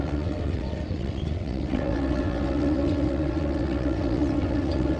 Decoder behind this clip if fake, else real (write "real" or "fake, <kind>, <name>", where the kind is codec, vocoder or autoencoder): fake, vocoder, WaveNeXt